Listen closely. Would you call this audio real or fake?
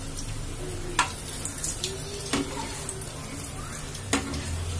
real